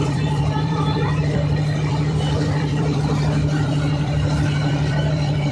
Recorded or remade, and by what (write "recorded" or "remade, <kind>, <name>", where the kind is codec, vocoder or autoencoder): remade, vocoder, BigVGAN v2